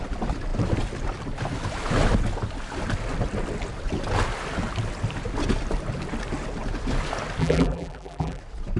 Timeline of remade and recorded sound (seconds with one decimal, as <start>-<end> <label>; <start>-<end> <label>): 0.0-7.4 recorded; 7.4-8.4 remade; 8.4-8.8 recorded